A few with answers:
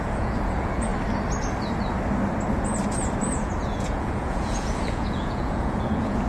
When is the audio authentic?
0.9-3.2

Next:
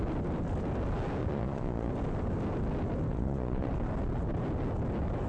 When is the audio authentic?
0.0-1.2; 1.9-3.1; 3.7-5.3